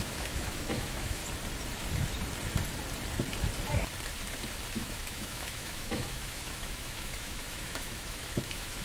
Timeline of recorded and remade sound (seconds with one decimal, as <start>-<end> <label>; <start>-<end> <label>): 0.0-1.2 remade; 1.2-4.7 recorded; 4.7-8.8 remade